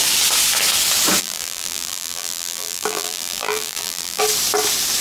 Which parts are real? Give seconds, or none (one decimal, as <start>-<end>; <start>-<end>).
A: 0.0-1.2; 4.2-5.0

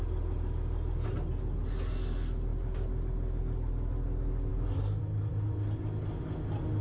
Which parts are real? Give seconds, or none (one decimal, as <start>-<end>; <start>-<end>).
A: 0.0-6.8

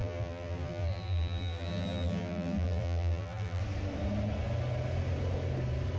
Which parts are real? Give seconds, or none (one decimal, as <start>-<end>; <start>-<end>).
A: 3.6-6.0